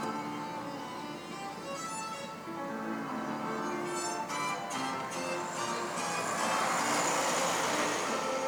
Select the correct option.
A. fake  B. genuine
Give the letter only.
B